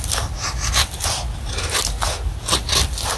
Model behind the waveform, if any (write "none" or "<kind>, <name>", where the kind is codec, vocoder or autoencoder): none